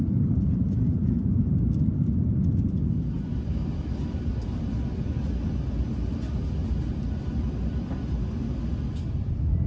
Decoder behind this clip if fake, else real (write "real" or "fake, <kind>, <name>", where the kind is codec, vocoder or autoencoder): real